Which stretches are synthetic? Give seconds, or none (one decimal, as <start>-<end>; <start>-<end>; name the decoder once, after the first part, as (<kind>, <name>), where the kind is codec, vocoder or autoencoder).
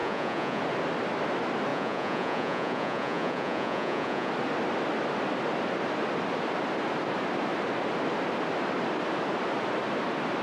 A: 0.0-0.6 (vocoder, Vocos); 1.7-4.3